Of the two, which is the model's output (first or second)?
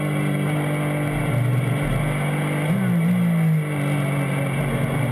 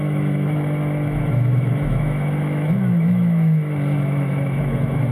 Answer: second